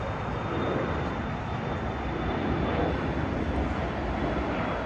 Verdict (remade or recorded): recorded